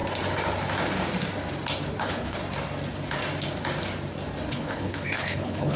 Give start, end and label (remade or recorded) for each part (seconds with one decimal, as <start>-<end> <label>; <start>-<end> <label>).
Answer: 0.0-2.0 recorded; 2.0-2.4 remade; 2.4-4.5 recorded; 4.5-5.8 remade

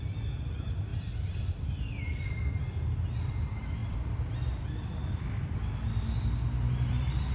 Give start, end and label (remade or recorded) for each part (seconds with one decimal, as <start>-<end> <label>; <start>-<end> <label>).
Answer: 0.0-0.9 recorded; 0.9-2.3 remade; 2.3-3.8 recorded; 3.8-4.6 remade; 4.6-7.3 recorded